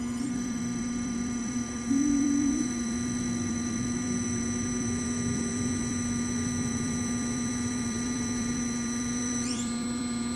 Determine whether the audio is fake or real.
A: fake